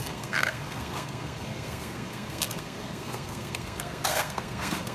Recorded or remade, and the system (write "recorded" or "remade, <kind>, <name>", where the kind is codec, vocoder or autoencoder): remade, codec, SNAC